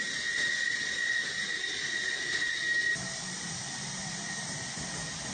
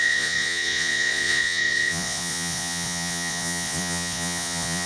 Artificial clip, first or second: second